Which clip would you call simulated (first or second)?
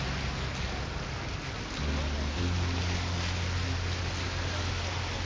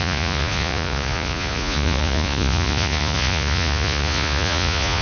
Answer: second